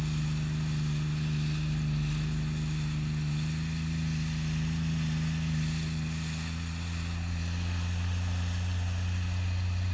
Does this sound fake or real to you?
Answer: real